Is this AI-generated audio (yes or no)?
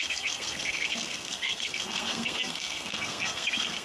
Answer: yes